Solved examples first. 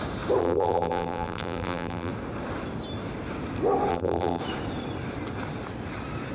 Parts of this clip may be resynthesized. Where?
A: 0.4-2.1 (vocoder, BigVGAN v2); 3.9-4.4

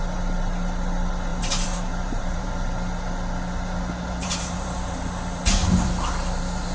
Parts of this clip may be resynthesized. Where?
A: 1.3-2.5 (vocoder, BigVGAN v2); 4.2-4.8

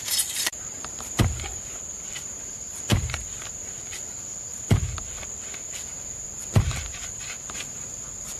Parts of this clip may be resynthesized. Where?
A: 0.0-8.4 (vocoder, BigVGAN v2)

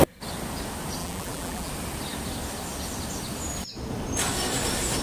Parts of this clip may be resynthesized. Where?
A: 1.0-1.7 (vocoder, BigVGAN v2)

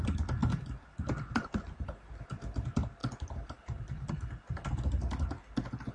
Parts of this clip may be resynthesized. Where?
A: 0.4-2.4 (vocoder, BigVGAN v2); 3.0-4.1

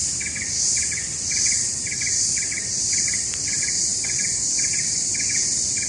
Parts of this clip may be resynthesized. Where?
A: 2.3-3.9 (vocoder, BigVGAN v2)

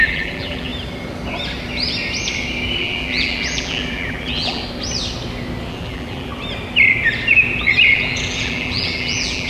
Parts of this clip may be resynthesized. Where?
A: 0.0-0.7 (vocoder, BigVGAN v2); 2.8-4.6; 5.7-6.3; 7.9-9.5